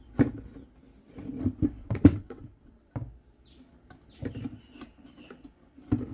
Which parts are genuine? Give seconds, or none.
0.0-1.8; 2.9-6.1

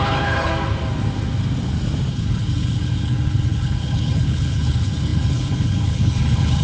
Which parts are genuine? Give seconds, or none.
0.5-2.1

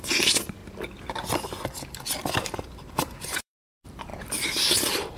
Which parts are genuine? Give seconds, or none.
0.6-2.9; 4.1-4.7

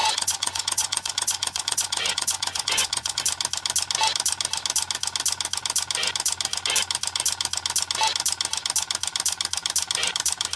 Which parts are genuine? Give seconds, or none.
3.2-10.6

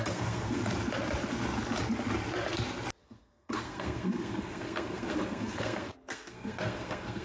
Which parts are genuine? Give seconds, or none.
0.6-3.0

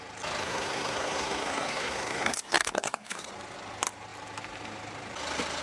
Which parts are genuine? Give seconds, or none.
0.0-0.4; 3.3-5.6

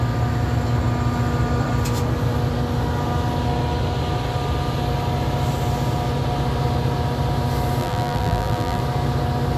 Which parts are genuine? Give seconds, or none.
0.0-7.8; 8.8-9.6

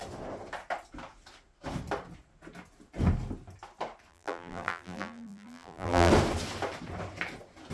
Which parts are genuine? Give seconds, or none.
0.0-4.1; 6.1-7.7